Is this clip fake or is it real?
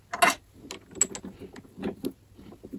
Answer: real